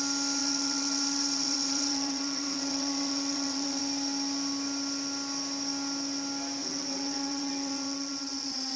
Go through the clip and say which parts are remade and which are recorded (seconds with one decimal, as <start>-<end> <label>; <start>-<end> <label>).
0.0-0.4 recorded; 0.4-3.8 remade; 3.8-6.6 recorded; 6.6-8.8 remade